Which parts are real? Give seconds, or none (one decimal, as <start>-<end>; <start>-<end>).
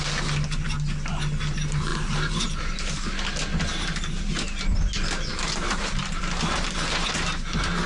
0.0-1.9; 2.4-3.7; 4.3-5.3; 6.2-7.9